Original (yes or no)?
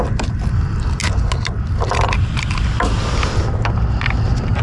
yes